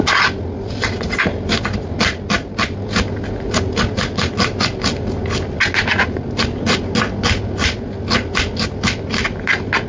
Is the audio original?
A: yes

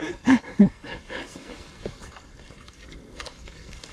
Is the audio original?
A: no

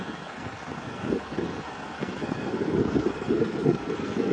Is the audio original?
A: no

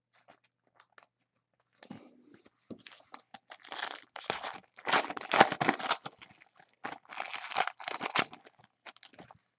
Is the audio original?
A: yes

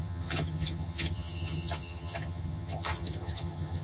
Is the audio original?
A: no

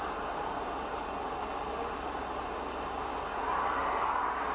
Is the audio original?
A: yes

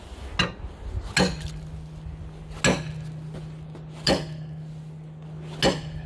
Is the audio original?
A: yes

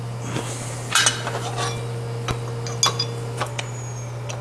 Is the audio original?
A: yes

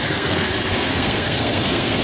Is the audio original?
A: no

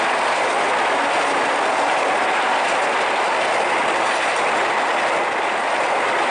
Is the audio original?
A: yes